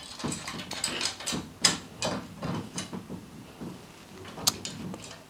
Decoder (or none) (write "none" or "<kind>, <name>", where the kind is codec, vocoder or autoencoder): none